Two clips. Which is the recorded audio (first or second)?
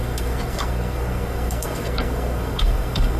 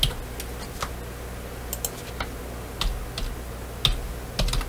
second